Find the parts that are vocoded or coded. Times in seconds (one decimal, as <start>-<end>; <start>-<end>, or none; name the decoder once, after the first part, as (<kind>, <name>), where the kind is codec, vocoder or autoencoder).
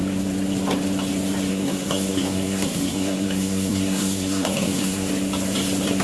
1.5-5.1 (codec, SNAC)